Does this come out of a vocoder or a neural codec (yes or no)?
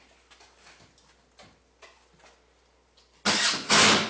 no